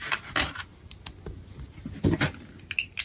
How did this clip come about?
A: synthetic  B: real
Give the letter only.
B